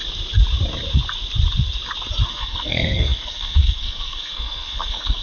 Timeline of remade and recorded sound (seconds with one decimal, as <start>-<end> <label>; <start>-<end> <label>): 0.0-2.3 recorded; 2.3-5.2 remade